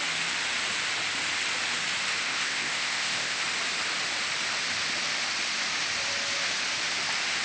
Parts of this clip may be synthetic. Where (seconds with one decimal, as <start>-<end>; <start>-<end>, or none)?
2.2-3.4